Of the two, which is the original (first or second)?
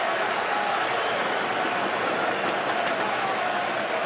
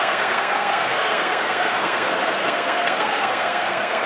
first